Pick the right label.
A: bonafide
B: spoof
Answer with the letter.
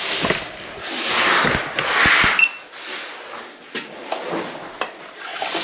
A